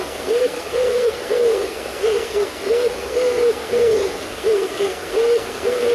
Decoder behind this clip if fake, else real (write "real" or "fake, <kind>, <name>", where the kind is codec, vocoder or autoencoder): fake, codec, SNAC